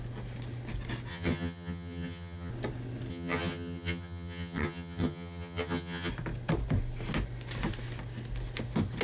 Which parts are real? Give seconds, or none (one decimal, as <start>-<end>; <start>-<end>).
0.0-1.1; 2.5-3.1; 6.1-9.0